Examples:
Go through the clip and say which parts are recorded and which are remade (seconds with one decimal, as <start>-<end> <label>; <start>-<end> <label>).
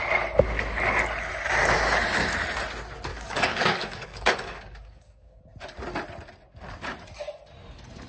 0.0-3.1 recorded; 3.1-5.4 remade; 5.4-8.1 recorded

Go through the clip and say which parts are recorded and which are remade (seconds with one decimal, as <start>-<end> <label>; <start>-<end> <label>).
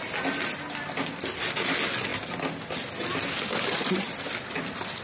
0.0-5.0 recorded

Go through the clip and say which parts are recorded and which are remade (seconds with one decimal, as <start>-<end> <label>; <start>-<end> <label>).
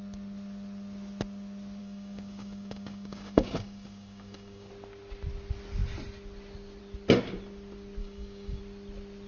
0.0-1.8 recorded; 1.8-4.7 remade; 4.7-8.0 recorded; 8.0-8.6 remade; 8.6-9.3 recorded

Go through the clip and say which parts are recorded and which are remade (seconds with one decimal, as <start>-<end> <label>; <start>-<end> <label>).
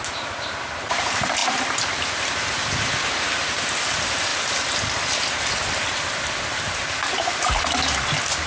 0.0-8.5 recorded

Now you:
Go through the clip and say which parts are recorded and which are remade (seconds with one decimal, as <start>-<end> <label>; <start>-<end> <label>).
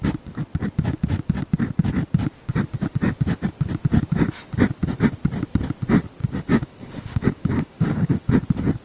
0.0-6.2 recorded; 6.2-8.3 remade; 8.3-8.8 recorded